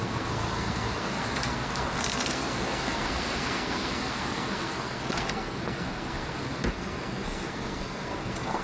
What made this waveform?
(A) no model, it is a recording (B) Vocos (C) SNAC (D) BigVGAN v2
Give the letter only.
C